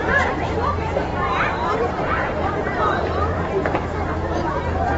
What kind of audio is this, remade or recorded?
remade